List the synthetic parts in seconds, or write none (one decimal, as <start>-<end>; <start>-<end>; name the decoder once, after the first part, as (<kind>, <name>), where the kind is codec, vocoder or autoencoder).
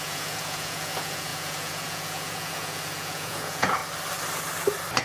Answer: 0.0-3.8 (vocoder, Vocos)